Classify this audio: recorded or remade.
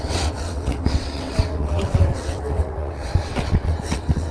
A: remade